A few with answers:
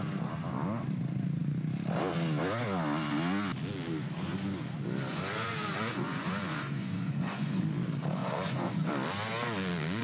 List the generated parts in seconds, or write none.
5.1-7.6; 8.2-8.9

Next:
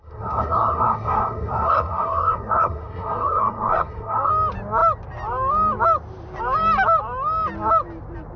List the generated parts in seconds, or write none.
0.0-4.3

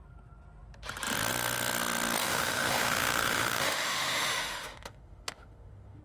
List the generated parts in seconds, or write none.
2.2-6.0

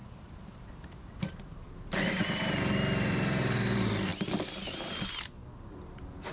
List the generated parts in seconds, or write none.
0.0-4.1; 4.7-5.4